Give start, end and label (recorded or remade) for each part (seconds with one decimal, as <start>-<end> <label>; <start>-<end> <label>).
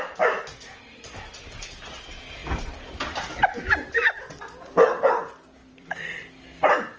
0.0-5.6 recorded; 5.6-6.2 remade; 6.2-7.0 recorded